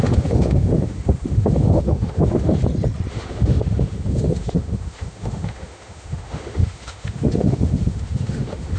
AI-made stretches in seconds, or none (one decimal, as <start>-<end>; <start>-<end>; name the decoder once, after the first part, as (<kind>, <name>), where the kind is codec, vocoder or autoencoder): 0.0-2.6 (autoencoder, DAC-VAE); 3.1-8.8